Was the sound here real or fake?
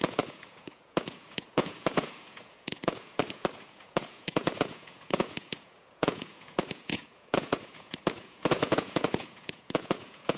fake